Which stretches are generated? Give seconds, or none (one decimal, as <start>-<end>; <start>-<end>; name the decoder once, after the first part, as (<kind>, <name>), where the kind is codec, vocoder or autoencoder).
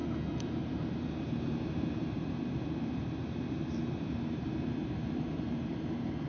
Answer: 0.5-6.3 (vocoder, BigVGAN v2)